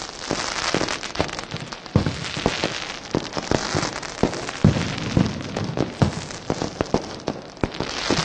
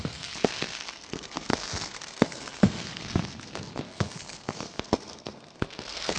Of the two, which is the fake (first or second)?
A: second